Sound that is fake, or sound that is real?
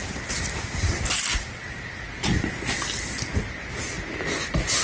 real